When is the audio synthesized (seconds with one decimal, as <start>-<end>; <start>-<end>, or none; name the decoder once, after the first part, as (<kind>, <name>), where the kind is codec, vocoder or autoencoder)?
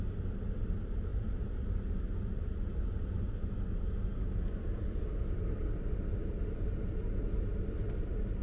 none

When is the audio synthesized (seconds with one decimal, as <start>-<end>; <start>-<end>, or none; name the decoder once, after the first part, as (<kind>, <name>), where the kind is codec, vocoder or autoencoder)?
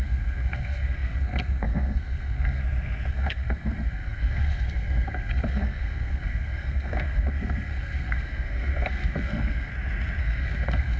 0.0-2.6 (codec, SNAC); 3.1-9.7; 10.2-11.0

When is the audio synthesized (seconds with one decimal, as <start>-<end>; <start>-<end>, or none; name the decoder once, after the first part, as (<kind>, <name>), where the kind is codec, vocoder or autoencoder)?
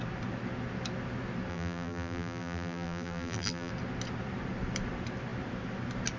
1.5-3.7 (vocoder, BigVGAN v2)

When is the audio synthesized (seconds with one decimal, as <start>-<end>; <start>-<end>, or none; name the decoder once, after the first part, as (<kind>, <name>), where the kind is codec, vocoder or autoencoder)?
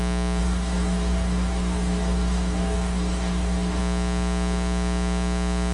0.4-3.8 (codec, DAC)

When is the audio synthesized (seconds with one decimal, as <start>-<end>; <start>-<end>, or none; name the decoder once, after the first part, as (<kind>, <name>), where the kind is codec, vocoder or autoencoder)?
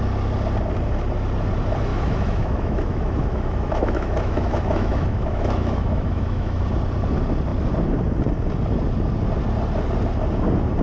1.9-6.6 (autoencoder, DAC-VAE)